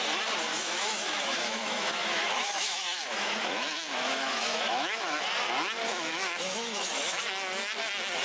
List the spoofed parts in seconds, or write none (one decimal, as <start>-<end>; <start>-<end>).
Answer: 0.5-5.2; 5.9-7.2